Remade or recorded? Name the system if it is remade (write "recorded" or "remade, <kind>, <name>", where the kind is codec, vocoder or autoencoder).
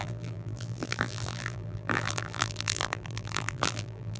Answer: remade, vocoder, BigVGAN v2